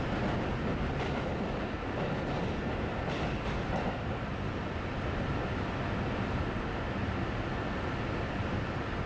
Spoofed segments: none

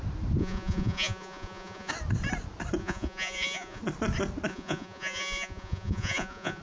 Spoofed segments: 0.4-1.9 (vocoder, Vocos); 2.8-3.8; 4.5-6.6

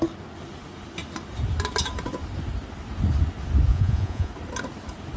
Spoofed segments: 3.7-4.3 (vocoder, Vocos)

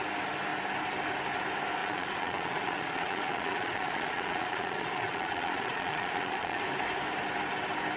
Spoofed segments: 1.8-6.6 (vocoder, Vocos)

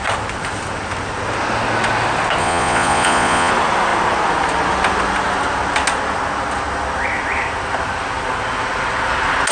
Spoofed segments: 2.4-3.5 (vocoder, Vocos)

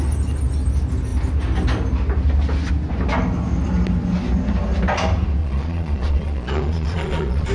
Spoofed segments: 5.4-7.5 (vocoder, Vocos)

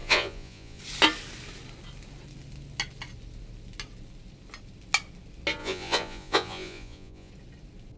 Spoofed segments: 0.0-0.8 (vocoder, Vocos); 5.6-7.3

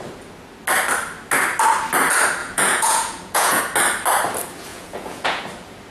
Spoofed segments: 2.4-3.6 (vocoder, Vocos); 4.7-5.4